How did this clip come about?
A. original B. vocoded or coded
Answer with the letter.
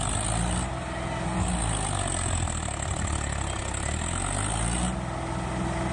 A